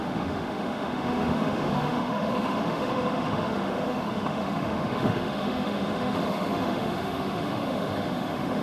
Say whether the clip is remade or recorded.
remade